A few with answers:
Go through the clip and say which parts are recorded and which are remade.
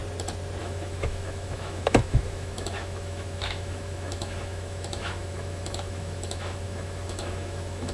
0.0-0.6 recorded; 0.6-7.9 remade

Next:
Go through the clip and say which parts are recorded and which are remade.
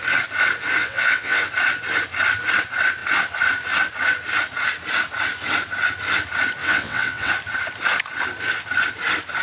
0.0-0.8 recorded; 0.8-1.5 remade; 1.5-6.6 recorded; 6.6-7.3 remade; 7.3-9.4 recorded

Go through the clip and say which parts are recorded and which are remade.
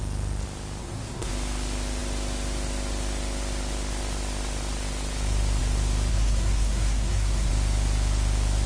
0.0-0.8 recorded; 0.8-1.3 remade; 1.3-6.1 recorded; 6.1-7.5 remade; 7.5-8.7 recorded